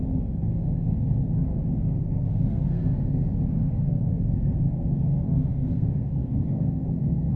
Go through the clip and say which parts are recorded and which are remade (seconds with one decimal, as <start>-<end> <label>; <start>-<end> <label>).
0.0-2.0 recorded; 2.0-2.8 remade; 2.8-3.6 recorded; 3.6-7.4 remade